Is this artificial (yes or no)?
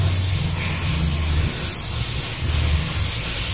no